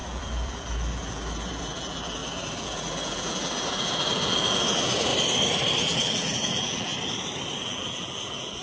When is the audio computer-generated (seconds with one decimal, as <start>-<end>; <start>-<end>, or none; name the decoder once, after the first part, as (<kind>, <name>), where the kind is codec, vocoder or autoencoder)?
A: 0.0-5.1 (vocoder, BigVGAN v2); 5.8-6.9; 7.6-8.6